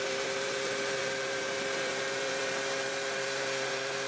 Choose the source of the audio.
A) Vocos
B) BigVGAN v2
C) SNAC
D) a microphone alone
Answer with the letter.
B